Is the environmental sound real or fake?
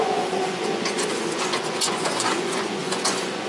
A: fake